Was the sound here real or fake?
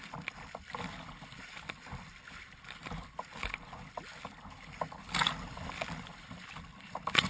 real